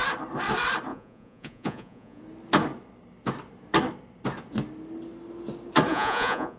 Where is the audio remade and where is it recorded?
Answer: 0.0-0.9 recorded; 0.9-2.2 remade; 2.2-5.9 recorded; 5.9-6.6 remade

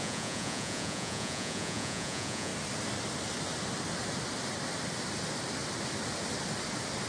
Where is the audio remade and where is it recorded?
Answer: 0.0-2.5 remade; 2.5-7.1 recorded

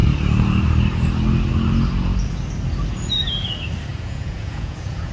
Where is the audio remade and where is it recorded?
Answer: 0.0-3.9 recorded; 3.9-5.1 remade